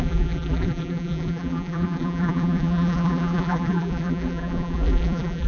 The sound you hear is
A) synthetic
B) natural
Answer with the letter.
A